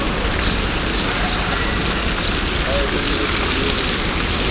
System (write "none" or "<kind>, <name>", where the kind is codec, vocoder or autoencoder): none